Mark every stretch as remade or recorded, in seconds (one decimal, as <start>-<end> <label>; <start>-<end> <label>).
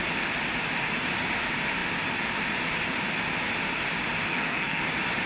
0.0-4.3 recorded; 4.3-4.8 remade; 4.8-5.3 recorded